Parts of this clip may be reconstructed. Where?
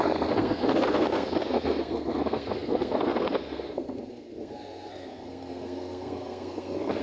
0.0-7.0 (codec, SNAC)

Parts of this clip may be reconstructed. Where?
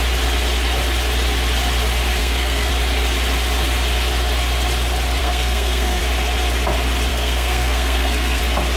2.2-2.7 (codec, SNAC); 5.2-6.0; 7.1-8.4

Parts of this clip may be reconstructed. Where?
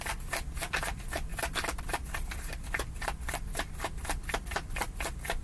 none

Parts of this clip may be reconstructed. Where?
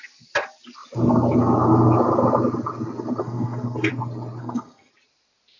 3.2-3.9 (codec, SNAC); 4.4-4.9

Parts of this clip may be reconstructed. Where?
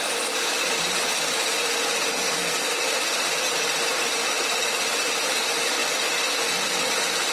2.1-2.8 (codec, SNAC)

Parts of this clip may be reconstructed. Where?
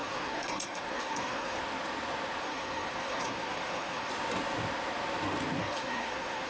0.0-1.6 (codec, SNAC); 2.4-4.1; 5.6-6.5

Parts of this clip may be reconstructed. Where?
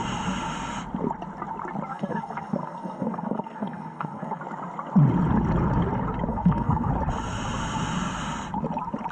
1.9-4.4 (codec, SNAC); 6.3-6.9